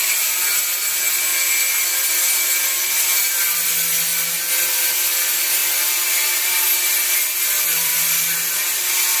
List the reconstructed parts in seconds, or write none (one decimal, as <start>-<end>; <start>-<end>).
none

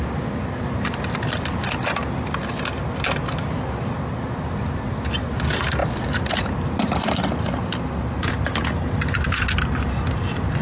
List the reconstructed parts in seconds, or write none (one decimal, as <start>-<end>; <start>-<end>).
none

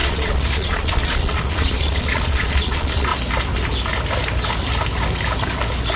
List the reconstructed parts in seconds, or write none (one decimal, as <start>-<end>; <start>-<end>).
0.0-3.1

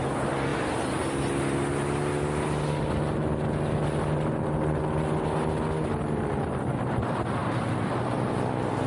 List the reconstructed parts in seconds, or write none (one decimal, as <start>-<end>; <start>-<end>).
none

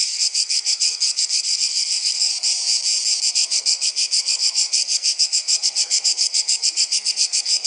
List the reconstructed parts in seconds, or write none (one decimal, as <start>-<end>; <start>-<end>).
0.0-2.3; 3.3-7.7

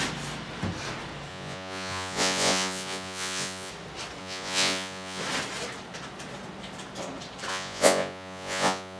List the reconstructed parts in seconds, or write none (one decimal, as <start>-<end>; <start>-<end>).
1.3-3.7; 4.2-5.2; 7.5-9.0

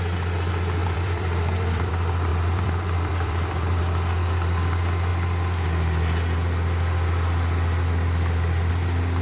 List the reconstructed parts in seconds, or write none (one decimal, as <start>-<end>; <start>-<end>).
0.8-1.9; 2.3-3.8